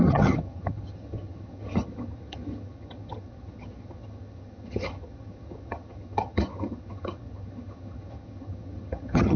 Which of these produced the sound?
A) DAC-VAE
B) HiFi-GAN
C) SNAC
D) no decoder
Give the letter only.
B